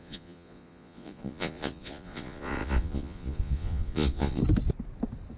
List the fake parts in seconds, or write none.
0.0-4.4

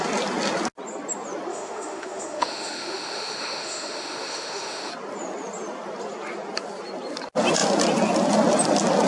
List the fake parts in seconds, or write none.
1.5-4.9

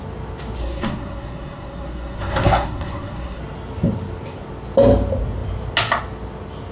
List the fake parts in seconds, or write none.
0.6-3.4

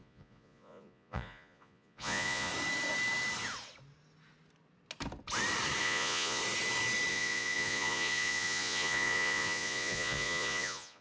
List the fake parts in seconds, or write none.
0.0-2.5; 5.8-6.4; 7.1-11.0